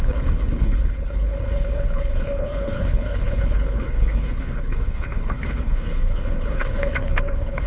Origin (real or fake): fake